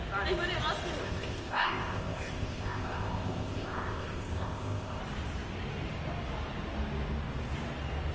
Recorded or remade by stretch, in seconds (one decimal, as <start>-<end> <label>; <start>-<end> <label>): 0.0-1.0 recorded; 1.0-5.0 remade; 5.0-8.1 recorded